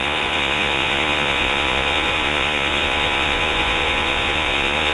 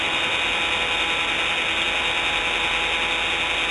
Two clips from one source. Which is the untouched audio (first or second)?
second